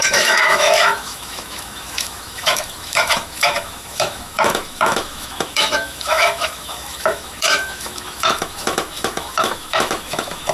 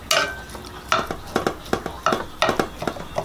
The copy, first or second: first